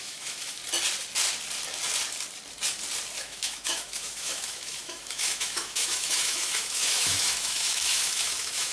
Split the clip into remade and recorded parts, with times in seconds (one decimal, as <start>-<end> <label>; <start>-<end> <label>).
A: 0.0-0.6 remade; 0.6-3.2 recorded; 3.2-8.7 remade